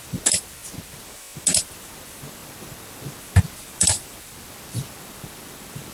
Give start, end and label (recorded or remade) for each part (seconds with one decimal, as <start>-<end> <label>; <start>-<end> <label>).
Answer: 0.0-0.6 remade; 0.6-1.7 recorded; 1.7-5.9 remade

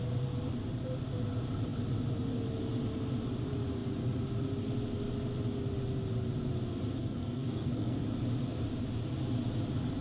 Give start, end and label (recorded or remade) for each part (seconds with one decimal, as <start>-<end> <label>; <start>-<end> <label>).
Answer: 0.0-7.0 recorded; 7.0-8.0 remade; 8.0-10.0 recorded

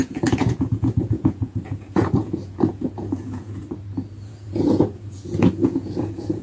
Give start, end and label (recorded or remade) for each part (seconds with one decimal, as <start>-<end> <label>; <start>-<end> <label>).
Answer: 0.0-3.6 remade; 3.6-4.3 recorded; 4.3-6.4 remade